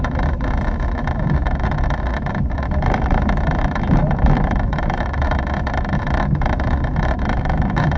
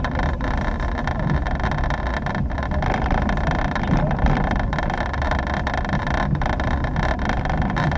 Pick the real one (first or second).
second